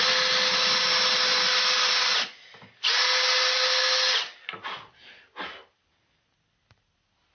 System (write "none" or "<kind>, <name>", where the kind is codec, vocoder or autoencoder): none